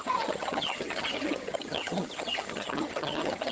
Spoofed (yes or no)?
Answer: yes